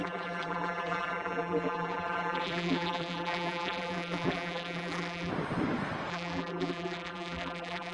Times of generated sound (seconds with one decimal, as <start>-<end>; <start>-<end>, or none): 0.0-5.3; 6.1-7.9